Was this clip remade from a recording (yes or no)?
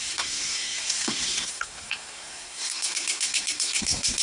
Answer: yes